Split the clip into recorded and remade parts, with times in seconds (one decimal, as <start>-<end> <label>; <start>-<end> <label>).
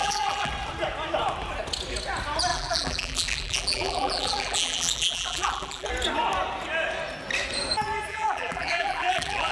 0.0-0.5 remade; 0.5-2.5 recorded; 2.5-5.9 remade; 5.9-8.1 recorded; 8.1-9.5 remade